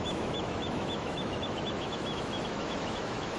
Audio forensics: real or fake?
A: fake